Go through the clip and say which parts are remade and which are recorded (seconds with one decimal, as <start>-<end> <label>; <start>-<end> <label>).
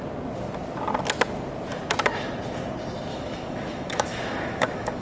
0.0-3.1 recorded; 3.1-5.0 remade